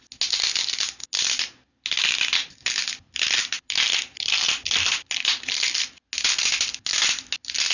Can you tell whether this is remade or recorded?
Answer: recorded